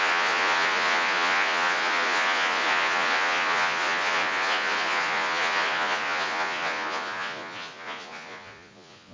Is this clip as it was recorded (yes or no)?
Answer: no